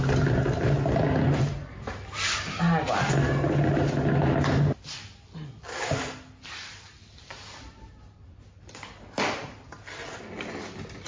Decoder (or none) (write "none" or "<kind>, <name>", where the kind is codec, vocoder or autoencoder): none